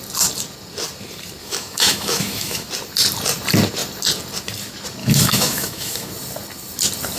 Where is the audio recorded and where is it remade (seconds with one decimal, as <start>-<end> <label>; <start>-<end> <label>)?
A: 0.0-1.4 recorded; 1.4-2.7 remade; 2.7-5.0 recorded; 5.0-6.1 remade; 6.1-7.2 recorded

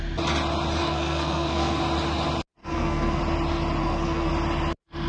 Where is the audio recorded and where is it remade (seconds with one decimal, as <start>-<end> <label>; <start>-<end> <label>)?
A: 0.0-0.8 recorded; 0.8-1.8 remade; 1.8-2.6 recorded; 2.6-3.2 remade; 3.2-3.8 recorded; 3.8-4.3 remade; 4.3-5.1 recorded

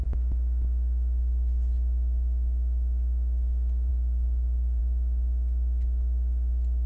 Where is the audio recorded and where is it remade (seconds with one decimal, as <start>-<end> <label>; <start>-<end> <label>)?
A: 0.0-3.9 recorded; 3.9-4.8 remade; 4.8-6.9 recorded

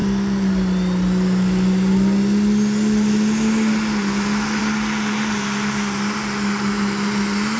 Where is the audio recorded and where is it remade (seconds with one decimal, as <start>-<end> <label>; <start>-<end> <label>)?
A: 0.0-7.6 recorded

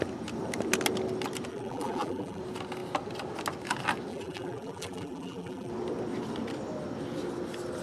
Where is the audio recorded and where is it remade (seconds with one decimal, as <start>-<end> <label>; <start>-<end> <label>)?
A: 0.0-1.5 recorded; 1.5-2.4 remade; 2.4-4.1 recorded; 4.1-5.7 remade; 5.7-7.8 recorded

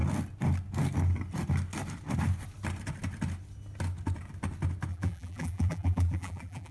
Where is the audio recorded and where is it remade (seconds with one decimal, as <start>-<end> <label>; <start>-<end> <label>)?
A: 0.0-4.9 recorded; 4.9-6.7 remade